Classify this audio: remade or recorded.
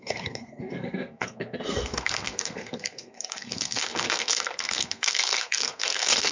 remade